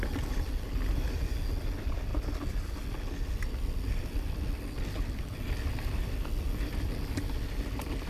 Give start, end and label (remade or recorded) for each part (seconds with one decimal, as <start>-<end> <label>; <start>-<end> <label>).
0.0-8.1 recorded